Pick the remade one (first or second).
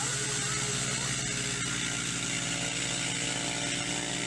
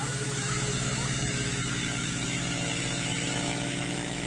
second